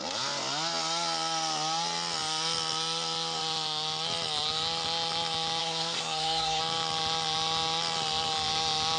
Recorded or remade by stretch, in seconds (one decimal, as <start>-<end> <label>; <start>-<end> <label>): 0.0-5.6 recorded; 5.6-6.6 remade; 6.6-9.0 recorded

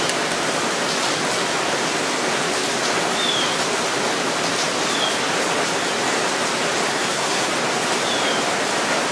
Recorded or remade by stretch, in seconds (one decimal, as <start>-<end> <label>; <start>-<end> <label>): 0.0-6.9 recorded; 6.9-7.5 remade; 7.5-9.1 recorded

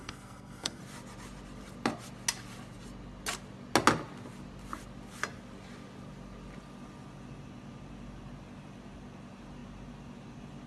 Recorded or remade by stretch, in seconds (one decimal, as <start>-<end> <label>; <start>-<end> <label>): 0.0-0.8 remade; 0.8-10.7 recorded

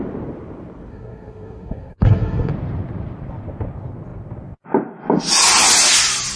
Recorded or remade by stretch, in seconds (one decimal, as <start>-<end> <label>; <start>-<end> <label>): 0.0-0.9 recorded; 0.9-2.5 remade; 2.5-6.4 recorded